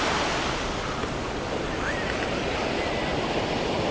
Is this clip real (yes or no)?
yes